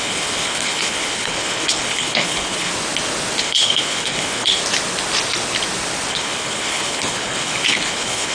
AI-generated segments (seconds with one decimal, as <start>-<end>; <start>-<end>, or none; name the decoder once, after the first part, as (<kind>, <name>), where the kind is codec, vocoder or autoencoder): 0.0-2.7 (codec, HILCodec); 3.4-4.6; 6.1-8.3